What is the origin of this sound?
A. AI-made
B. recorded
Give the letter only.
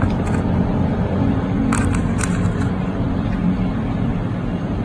A